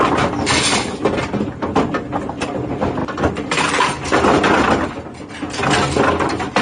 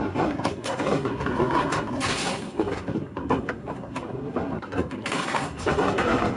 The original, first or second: first